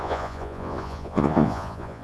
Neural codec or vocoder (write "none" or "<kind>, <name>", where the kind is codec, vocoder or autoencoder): vocoder, Vocos